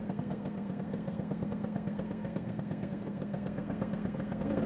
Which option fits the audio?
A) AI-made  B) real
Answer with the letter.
A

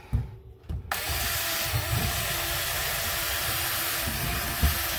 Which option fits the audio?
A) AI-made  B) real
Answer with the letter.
B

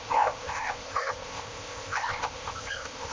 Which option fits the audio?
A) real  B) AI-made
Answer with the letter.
B